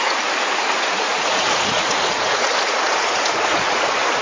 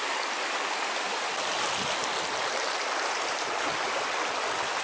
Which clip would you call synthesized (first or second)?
first